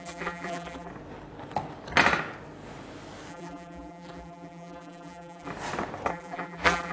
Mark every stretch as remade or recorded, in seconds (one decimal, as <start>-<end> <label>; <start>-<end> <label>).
0.0-0.9 remade; 0.9-3.3 recorded; 3.3-5.5 remade; 5.5-6.1 recorded; 6.1-6.9 remade